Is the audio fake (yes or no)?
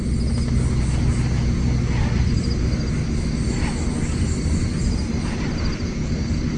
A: no